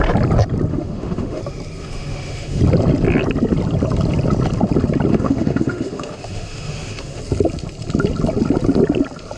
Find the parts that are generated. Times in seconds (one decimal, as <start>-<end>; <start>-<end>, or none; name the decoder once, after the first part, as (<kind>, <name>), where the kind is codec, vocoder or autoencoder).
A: 0.7-1.4 (autoencoder, DAC-VAE); 1.8-2.6; 5.1-7.2